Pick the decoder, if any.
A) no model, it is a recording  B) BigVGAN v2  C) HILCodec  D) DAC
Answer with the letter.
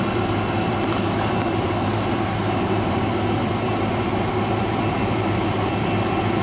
B